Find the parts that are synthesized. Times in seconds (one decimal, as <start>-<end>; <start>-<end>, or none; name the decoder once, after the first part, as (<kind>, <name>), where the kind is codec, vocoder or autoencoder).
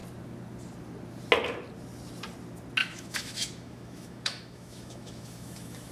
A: 2.8-5.9 (autoencoder, DAC-VAE)